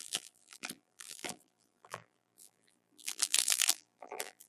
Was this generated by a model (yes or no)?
yes